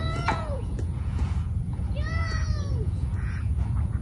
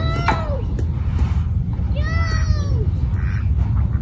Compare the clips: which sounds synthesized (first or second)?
first